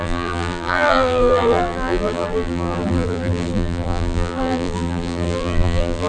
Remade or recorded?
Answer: remade